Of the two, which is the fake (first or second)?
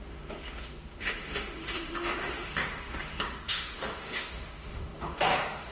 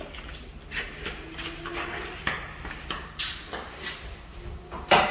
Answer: first